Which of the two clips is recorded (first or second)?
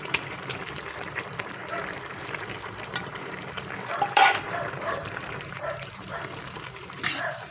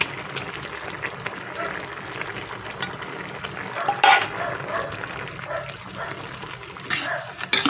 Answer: second